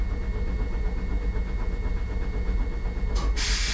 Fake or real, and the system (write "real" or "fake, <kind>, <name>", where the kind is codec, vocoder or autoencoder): real